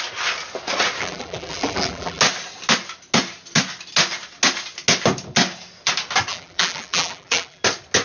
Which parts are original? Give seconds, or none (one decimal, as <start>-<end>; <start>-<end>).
0.0-1.0; 2.2-6.3; 7.6-8.0